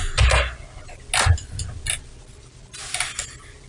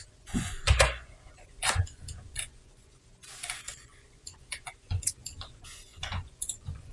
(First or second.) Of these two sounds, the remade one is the second